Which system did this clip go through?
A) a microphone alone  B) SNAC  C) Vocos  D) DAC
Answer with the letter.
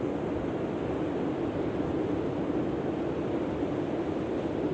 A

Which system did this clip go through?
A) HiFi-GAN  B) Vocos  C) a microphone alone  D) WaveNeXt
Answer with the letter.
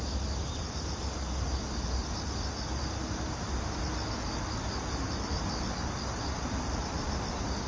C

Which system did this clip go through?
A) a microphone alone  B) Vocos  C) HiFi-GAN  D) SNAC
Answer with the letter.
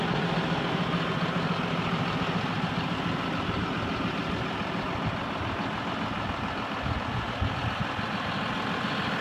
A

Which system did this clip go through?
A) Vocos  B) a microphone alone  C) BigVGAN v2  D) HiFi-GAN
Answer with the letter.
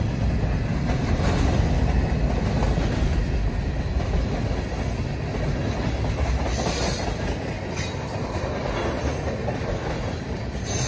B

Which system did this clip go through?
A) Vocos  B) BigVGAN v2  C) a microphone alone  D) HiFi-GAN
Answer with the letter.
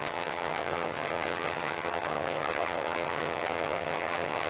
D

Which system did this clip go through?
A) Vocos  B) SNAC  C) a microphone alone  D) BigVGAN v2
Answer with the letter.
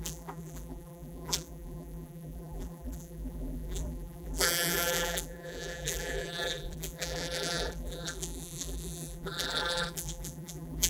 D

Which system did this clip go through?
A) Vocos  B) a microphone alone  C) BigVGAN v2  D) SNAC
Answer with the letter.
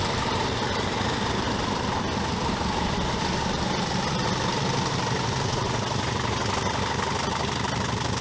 B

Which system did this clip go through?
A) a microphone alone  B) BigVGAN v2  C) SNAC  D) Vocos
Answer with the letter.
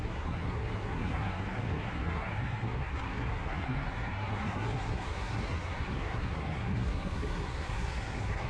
C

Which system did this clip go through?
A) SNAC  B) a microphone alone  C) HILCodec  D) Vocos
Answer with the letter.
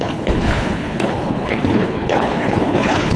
C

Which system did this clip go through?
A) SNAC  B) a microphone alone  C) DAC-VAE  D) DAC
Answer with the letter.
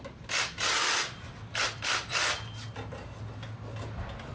B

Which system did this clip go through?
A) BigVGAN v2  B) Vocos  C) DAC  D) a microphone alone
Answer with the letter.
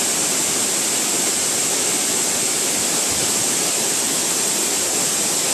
A